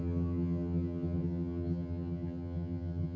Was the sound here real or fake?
fake